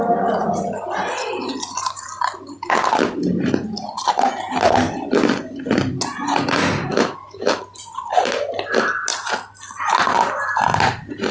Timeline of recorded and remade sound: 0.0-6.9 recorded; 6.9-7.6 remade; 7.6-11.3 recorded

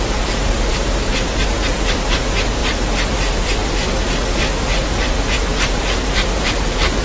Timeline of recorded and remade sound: 0.0-2.6 remade; 2.6-3.1 recorded; 3.1-7.0 remade

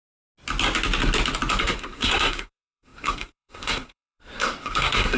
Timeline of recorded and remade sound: 0.0-1.6 recorded; 1.6-5.2 remade

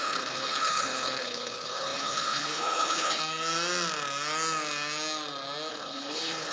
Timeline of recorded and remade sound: 0.0-3.2 remade; 3.2-5.7 recorded; 5.7-6.5 remade

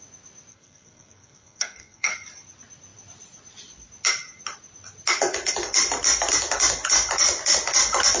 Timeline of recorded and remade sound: 0.0-0.5 recorded; 0.5-2.1 remade; 2.1-8.2 recorded